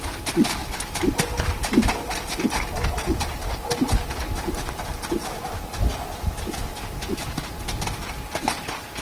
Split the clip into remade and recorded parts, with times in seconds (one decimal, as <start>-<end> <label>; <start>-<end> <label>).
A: 0.0-9.0 recorded